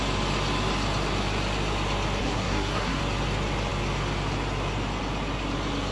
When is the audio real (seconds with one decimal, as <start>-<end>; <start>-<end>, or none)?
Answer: 0.0-2.2; 3.0-5.9